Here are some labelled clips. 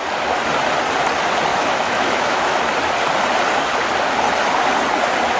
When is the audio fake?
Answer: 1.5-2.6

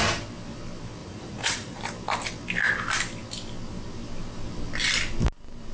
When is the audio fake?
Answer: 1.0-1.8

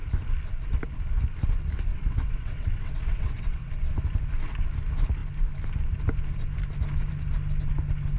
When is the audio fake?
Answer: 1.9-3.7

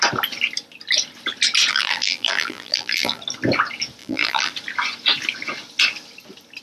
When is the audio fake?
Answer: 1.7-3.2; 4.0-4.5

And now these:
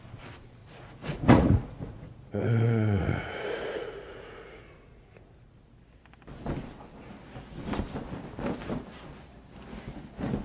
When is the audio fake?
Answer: 0.6-5.7

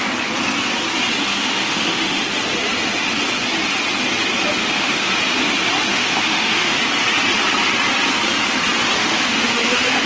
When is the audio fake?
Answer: 1.3-2.2; 4.6-5.1; 5.9-6.8; 9.0-10.1

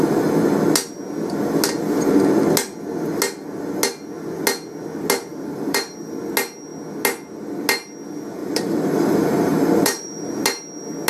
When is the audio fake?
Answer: 5.3-6.2; 8.4-10.4

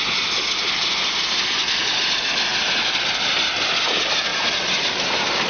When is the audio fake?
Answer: none